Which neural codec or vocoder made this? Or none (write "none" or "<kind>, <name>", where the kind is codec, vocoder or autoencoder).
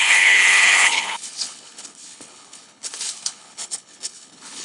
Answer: codec, HILCodec